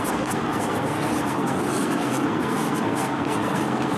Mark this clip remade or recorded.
remade